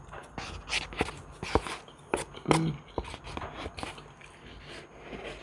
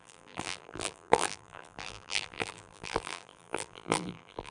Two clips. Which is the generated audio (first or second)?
second